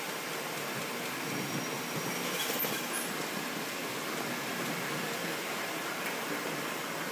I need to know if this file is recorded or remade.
recorded